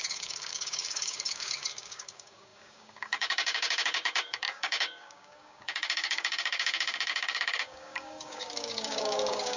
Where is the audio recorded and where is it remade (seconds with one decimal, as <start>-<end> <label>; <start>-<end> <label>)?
0.0-9.6 remade